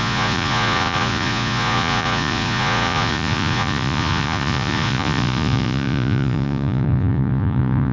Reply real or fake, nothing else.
fake